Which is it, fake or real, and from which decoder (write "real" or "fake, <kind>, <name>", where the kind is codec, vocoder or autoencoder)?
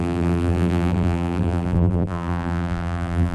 fake, vocoder, BigVGAN v2